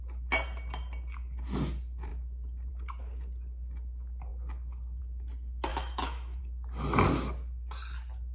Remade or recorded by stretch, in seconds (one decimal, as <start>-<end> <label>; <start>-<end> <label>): 0.0-5.7 recorded; 5.7-6.4 remade; 6.4-8.3 recorded